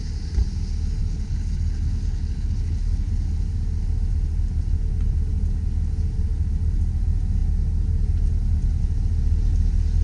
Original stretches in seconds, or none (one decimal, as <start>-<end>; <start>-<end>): 0.0-1.0; 3.1-10.0